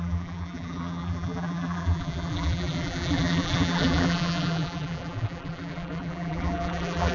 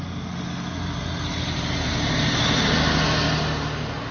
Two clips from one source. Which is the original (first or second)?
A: second